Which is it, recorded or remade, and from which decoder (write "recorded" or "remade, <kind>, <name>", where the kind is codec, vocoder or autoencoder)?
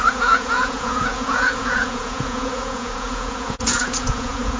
remade, vocoder, Vocos